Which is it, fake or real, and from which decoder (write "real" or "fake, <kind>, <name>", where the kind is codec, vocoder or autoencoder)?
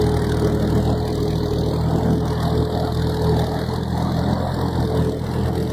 real